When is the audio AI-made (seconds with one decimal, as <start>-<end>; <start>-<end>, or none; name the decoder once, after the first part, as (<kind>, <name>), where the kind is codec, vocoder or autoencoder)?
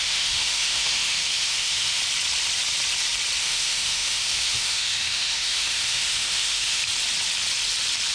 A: 0.0-2.0 (autoencoder, DAC-VAE); 3.4-6.8